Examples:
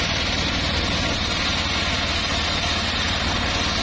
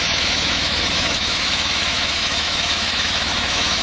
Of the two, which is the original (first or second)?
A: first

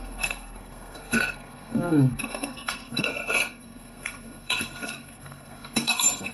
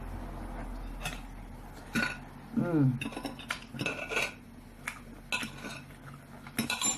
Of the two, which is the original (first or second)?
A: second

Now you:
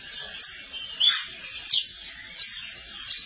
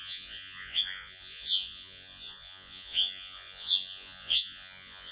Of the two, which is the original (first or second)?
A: first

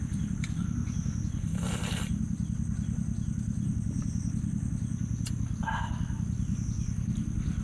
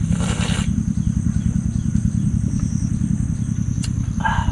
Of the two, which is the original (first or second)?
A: first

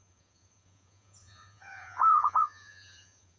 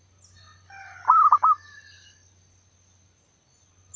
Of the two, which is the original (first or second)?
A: second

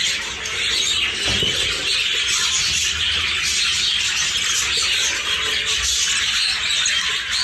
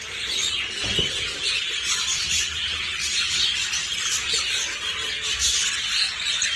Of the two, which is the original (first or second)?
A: first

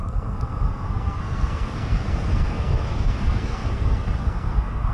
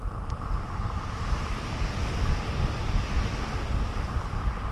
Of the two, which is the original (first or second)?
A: second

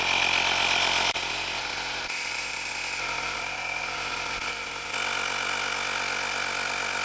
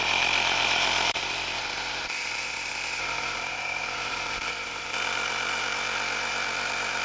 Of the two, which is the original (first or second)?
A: first